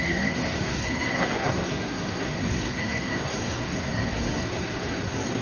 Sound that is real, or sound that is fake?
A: fake